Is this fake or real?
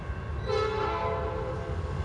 real